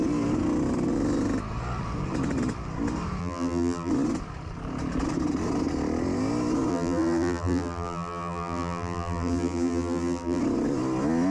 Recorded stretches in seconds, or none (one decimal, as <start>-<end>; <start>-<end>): 0.0-3.2; 3.9-6.7; 10.4-11.3